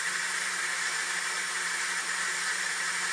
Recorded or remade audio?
remade